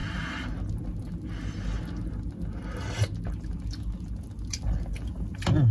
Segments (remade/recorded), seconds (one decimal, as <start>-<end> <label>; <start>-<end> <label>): 0.0-5.7 recorded